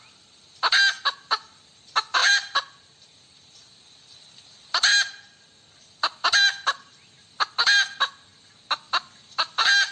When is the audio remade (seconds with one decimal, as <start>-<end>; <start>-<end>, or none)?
2.2-4.3